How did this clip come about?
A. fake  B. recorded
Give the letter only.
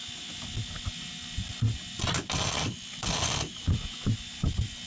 B